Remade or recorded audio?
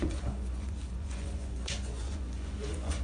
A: remade